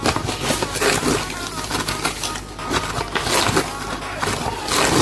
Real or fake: real